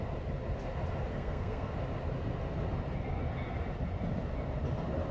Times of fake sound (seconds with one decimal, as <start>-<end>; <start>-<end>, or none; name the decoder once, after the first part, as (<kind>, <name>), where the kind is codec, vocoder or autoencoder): 1.1-1.7 (codec, SNAC)